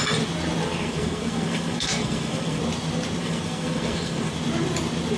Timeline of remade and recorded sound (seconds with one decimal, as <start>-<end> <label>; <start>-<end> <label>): 0.0-0.6 recorded; 0.6-2.6 remade; 2.6-3.2 recorded; 3.2-4.3 remade; 4.3-5.2 recorded